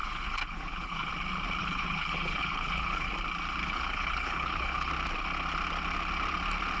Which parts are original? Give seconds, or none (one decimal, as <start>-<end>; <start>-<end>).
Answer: 1.1-1.6; 3.1-3.6; 4.9-6.8